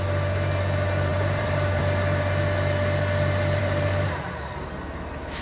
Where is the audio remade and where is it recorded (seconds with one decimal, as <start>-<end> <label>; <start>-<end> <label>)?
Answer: 0.0-1.1 recorded; 1.1-1.8 remade; 1.8-3.6 recorded; 3.6-4.1 remade; 4.1-5.4 recorded